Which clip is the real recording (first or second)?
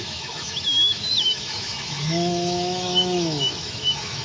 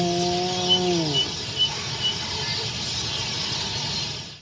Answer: second